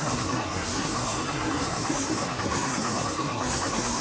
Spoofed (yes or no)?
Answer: yes